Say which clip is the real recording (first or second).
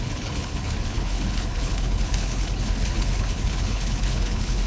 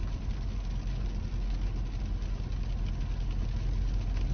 second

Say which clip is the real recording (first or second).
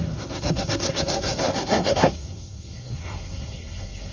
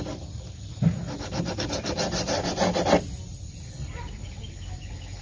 second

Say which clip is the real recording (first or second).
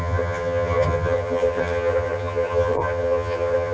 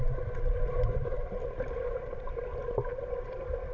second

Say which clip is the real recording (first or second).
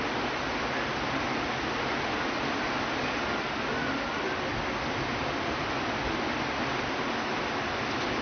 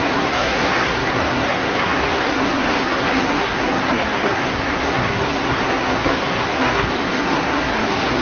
first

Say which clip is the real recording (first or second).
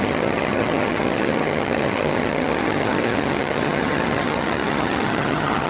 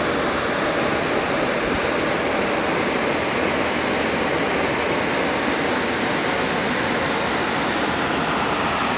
second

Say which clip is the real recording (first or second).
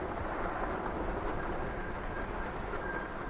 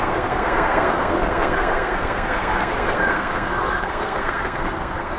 first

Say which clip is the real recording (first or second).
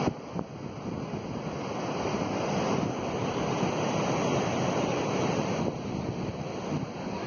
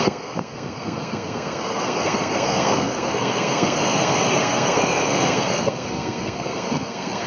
first